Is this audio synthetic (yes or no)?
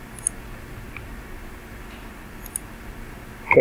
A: no